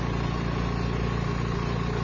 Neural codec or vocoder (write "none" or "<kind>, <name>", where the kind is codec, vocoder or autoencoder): none